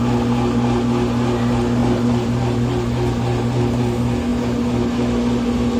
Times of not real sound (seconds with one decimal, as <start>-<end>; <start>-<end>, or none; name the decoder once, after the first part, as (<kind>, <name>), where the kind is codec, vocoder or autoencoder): none